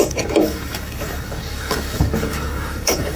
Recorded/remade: remade